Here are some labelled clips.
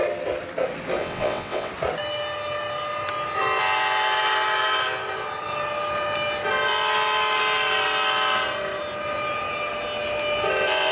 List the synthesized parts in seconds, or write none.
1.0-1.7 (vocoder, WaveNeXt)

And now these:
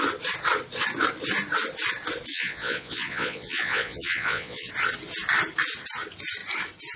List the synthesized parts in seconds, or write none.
2.3-4.7 (vocoder, Vocos)

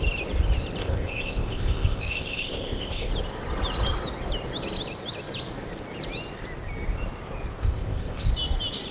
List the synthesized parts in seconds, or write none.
0.8-3.1 (codec, ZipCodec); 7.6-8.3